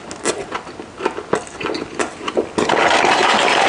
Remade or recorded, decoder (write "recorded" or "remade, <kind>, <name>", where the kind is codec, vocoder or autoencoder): recorded